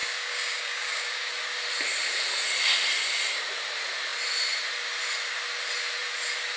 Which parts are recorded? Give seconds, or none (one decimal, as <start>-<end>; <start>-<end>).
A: 1.3-6.6